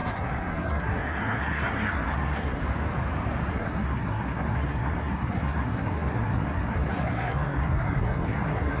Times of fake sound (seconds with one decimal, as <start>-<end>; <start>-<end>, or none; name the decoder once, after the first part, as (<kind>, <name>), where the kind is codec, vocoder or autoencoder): 0.0-2.6 (codec, SNAC); 3.5-8.8